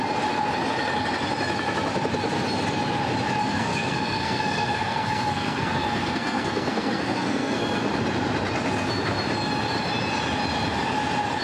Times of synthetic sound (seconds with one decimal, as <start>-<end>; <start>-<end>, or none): 3.5-7.9